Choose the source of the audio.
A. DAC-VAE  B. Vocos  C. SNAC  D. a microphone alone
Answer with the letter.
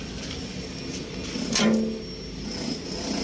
D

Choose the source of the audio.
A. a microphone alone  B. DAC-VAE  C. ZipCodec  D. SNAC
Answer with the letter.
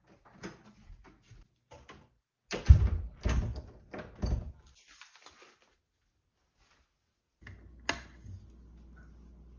A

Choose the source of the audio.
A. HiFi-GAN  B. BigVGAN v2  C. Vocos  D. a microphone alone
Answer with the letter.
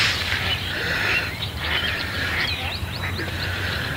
B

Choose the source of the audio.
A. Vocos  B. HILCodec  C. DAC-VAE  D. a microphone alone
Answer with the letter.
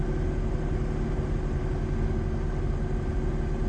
D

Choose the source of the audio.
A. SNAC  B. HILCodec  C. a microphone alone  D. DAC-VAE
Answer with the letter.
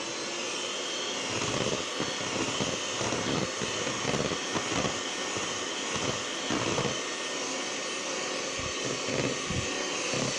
C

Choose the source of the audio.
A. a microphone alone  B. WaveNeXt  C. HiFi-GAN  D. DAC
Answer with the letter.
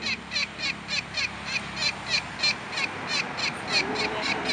A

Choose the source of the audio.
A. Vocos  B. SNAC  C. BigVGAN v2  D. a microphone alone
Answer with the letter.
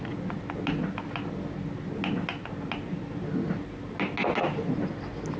D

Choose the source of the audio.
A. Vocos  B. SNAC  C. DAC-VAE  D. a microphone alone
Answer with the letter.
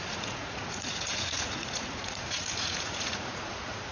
A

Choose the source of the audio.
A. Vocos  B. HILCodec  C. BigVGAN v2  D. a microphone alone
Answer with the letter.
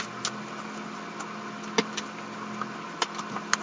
D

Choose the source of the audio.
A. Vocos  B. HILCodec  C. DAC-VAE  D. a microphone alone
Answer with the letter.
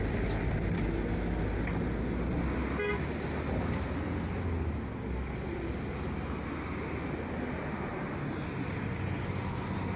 D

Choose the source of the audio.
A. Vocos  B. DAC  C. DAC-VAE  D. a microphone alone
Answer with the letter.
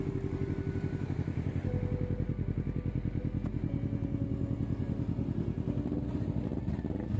D